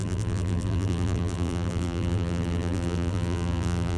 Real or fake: fake